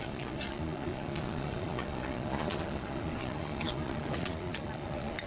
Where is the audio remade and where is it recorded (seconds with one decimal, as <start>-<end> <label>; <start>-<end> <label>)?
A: 0.0-5.3 remade